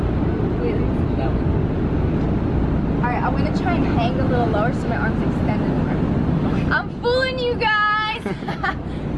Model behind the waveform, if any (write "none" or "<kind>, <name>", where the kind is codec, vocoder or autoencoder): none